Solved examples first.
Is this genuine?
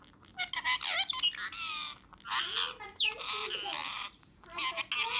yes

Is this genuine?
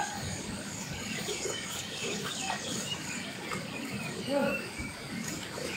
no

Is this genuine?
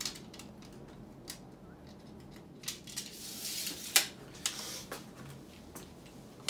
yes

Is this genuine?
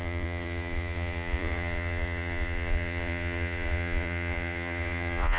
no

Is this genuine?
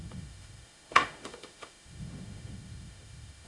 no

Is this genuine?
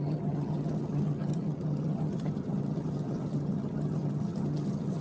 no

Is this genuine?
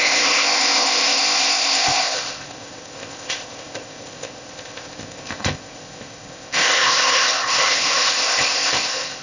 no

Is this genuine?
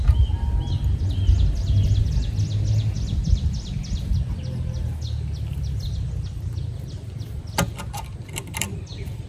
yes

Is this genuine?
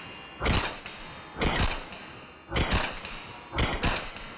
yes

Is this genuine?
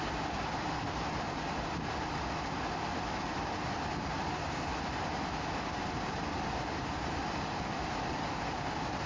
yes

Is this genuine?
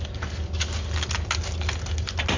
yes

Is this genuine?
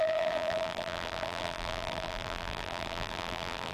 no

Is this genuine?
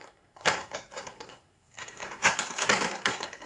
no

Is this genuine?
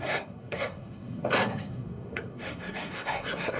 no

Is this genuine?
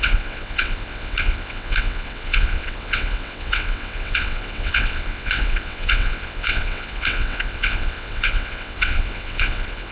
no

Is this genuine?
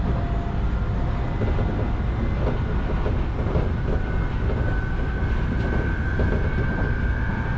yes